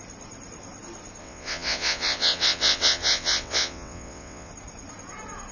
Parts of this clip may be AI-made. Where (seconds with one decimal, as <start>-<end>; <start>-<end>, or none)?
1.2-4.5